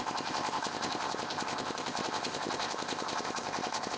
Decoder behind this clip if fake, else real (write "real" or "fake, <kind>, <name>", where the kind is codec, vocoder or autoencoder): fake, codec, ZipCodec